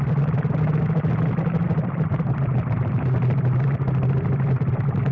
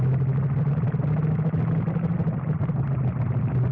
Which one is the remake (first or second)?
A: first